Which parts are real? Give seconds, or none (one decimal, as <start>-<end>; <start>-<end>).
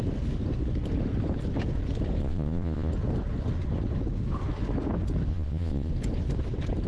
0.0-2.2; 2.9-5.3; 5.9-6.9